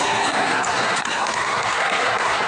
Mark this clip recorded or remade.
remade